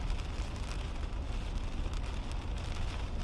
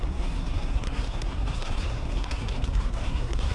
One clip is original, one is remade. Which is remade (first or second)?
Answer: second